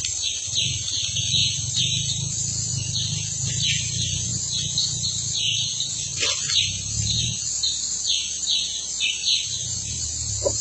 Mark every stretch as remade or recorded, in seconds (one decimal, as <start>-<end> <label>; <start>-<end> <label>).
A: 0.0-10.6 recorded